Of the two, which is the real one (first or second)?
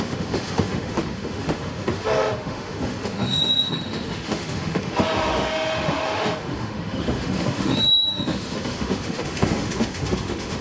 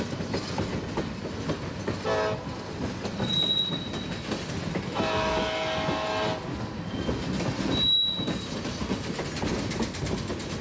second